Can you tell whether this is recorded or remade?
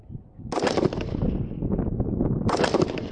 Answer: recorded